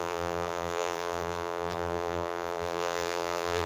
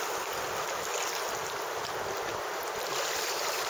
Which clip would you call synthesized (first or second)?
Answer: first